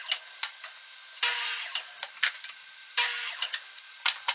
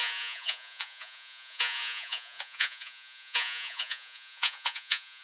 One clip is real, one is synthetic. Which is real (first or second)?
first